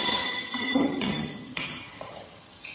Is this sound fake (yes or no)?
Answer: yes